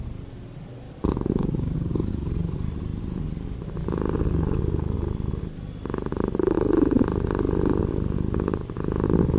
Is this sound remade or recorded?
recorded